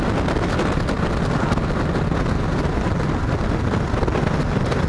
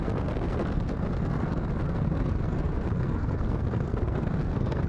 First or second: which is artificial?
second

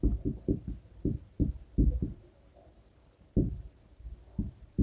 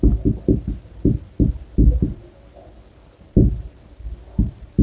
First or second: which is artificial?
first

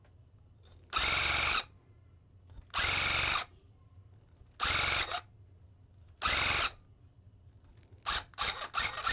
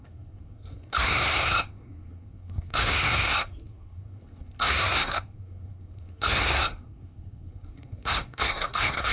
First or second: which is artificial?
second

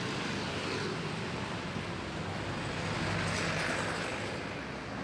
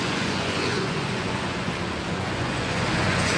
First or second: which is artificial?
second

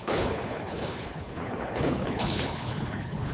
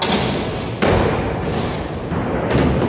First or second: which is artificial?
first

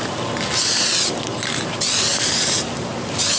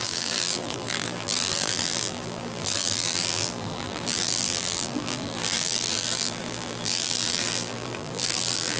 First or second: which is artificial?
second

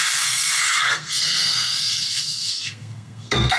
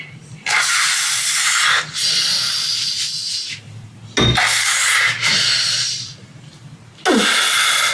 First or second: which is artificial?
first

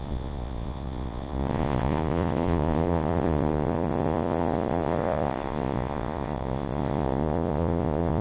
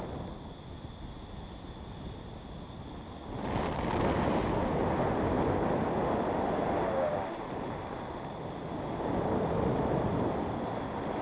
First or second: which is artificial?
first